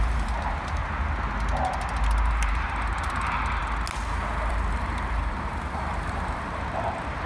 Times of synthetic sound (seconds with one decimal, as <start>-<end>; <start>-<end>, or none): 0.0-0.8; 2.3-3.6; 4.5-7.3